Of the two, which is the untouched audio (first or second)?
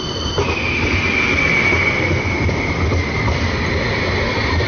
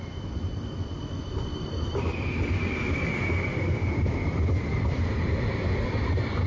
first